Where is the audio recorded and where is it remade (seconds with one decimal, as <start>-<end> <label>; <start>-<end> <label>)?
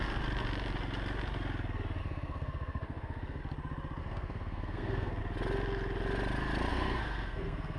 0.0-2.0 recorded; 2.0-3.4 remade; 3.4-4.0 recorded; 4.0-5.2 remade; 5.2-6.7 recorded; 6.7-7.8 remade